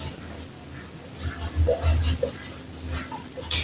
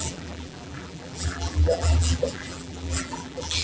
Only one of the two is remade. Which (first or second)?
second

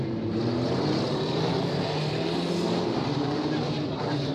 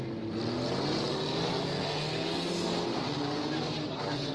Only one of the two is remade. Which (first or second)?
first